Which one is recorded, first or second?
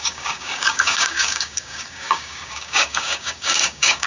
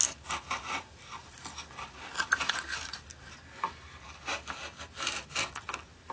second